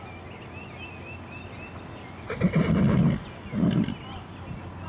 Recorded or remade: recorded